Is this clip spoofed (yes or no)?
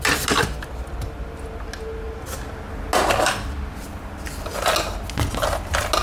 no